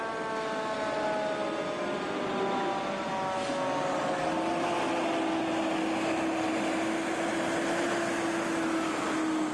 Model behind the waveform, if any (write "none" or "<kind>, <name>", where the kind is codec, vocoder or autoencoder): none